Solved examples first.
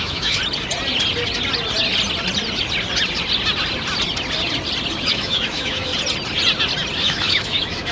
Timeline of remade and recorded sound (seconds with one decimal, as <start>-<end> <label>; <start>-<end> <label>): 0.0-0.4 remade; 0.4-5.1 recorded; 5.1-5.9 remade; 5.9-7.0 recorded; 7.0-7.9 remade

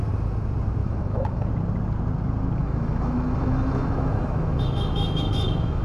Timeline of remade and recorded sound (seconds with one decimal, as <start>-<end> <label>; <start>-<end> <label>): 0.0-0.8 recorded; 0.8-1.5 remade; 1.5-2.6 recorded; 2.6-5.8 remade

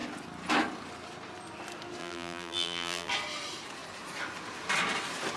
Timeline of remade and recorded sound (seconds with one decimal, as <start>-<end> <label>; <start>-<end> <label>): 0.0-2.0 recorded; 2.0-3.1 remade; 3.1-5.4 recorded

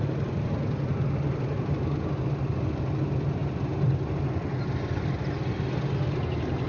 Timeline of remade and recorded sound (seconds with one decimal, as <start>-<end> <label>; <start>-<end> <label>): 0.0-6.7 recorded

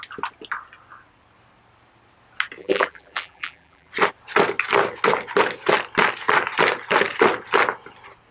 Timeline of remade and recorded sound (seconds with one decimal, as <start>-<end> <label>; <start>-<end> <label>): 0.0-2.6 recorded; 2.6-3.9 remade; 3.9-8.3 recorded

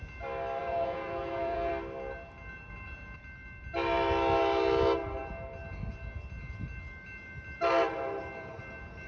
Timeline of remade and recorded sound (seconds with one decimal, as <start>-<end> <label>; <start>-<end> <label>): 0.0-0.6 recorded; 0.6-1.7 remade; 1.7-9.1 recorded

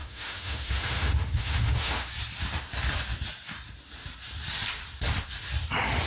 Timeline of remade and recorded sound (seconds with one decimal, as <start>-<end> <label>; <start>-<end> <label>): 0.0-2.1 remade; 2.1-6.1 recorded

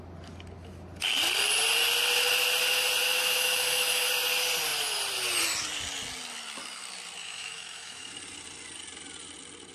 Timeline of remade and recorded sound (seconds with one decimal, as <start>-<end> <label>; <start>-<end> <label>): 0.0-3.0 recorded; 3.0-4.1 remade; 4.1-7.2 recorded; 7.2-8.1 remade; 8.1-9.7 recorded